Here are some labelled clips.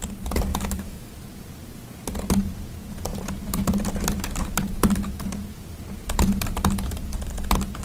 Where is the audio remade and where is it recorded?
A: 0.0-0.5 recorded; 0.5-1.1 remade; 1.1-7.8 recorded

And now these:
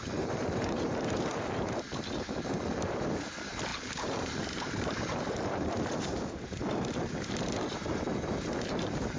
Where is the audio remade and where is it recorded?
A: 0.0-9.2 remade